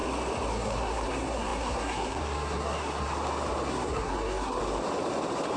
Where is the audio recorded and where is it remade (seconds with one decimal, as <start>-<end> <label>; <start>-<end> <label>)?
0.0-0.5 recorded; 0.5-3.1 remade; 3.1-3.7 recorded; 3.7-4.6 remade; 4.6-5.6 recorded